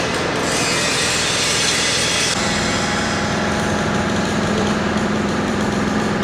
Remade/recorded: remade